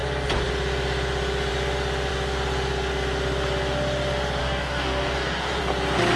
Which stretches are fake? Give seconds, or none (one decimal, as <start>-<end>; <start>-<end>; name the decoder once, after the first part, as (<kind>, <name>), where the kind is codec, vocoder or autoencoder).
4.4-5.6 (codec, DAC)